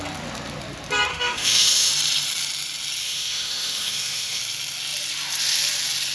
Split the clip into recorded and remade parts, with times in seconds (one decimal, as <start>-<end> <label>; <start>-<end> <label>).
0.0-1.1 recorded; 1.1-1.9 remade; 1.9-3.0 recorded; 3.0-4.4 remade; 4.4-6.1 recorded